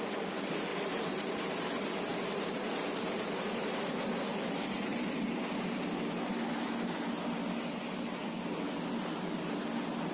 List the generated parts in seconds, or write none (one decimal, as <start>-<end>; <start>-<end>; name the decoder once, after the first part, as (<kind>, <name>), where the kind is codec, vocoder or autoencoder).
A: 0.7-1.4 (vocoder, BigVGAN v2); 4.9-5.4